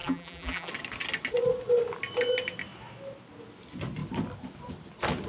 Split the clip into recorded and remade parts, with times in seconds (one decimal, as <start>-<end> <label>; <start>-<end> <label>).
0.0-0.7 remade; 0.7-5.3 recorded